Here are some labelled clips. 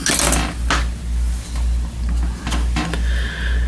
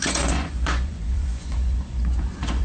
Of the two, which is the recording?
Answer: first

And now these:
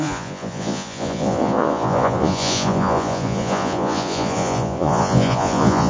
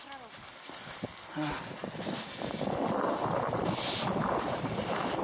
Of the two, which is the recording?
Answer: second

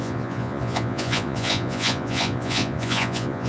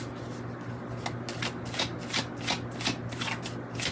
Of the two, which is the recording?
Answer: second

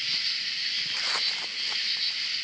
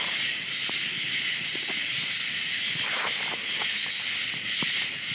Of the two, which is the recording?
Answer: second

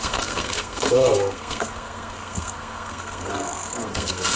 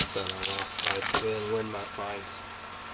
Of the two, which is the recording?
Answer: second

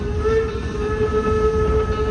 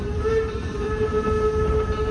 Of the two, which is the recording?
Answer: first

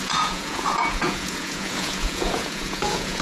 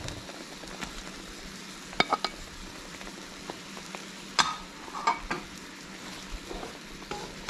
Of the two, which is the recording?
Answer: second